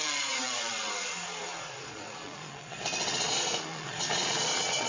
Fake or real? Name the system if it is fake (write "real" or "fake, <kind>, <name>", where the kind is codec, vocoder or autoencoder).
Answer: fake, vocoder, Vocos